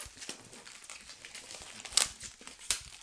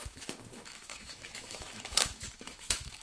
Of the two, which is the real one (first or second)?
first